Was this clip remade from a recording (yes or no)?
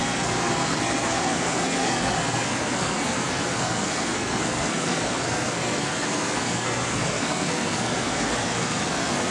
yes